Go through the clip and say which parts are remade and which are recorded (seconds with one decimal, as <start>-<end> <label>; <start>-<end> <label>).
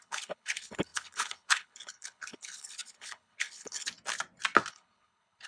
0.0-3.9 remade; 3.9-4.7 recorded; 4.7-5.5 remade